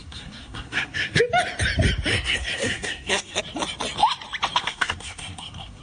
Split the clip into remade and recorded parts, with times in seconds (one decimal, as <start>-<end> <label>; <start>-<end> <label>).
0.0-1.2 remade; 1.2-2.1 recorded; 2.1-3.4 remade; 3.4-4.6 recorded; 4.6-5.8 remade